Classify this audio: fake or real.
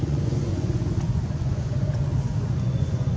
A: fake